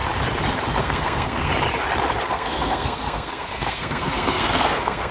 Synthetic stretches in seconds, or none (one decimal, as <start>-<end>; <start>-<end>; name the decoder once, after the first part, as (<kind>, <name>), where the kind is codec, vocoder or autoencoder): 0.8-1.5 (codec, SNAC); 2.2-5.1